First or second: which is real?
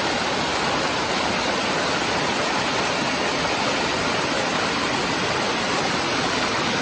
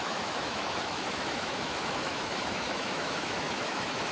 first